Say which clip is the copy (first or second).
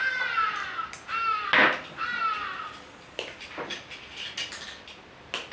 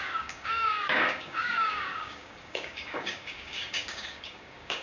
second